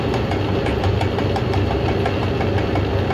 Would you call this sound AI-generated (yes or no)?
no